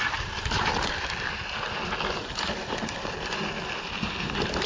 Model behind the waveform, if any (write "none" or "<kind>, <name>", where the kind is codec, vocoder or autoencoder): none